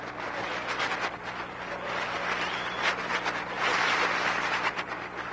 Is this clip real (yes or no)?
yes